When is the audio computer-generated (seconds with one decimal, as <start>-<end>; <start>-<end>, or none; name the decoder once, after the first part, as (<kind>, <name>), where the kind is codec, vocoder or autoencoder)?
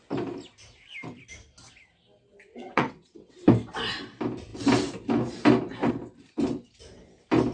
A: 2.5-3.3 (vocoder, WaveNeXt)